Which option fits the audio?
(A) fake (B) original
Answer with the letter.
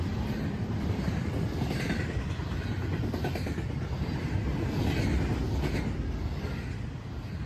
B